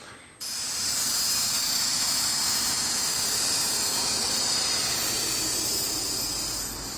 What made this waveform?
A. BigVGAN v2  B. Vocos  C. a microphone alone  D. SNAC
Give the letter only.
C